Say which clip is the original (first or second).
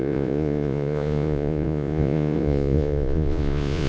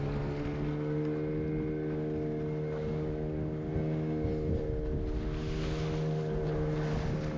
second